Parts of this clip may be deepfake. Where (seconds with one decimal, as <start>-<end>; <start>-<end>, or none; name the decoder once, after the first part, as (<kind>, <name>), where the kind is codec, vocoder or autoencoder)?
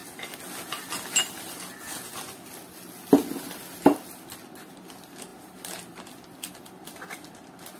none